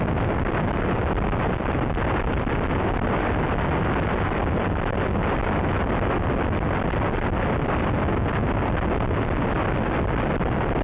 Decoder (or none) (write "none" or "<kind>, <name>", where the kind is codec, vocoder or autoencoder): none